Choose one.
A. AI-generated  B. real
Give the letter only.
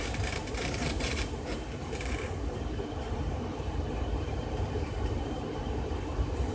A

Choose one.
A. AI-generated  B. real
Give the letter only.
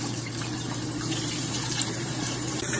A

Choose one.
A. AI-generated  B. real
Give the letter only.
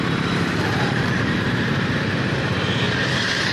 A